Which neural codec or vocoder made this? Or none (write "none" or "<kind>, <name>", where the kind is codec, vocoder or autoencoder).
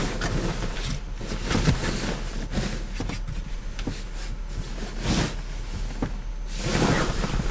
none